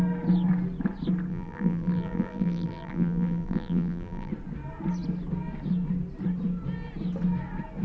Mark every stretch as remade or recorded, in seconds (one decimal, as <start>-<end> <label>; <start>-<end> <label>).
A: 0.0-1.3 recorded; 1.3-4.3 remade; 4.3-7.8 recorded